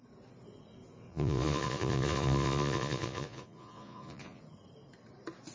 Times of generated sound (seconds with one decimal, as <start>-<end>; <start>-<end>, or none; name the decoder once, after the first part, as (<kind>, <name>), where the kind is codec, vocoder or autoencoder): 1.1-4.4 (vocoder, Vocos)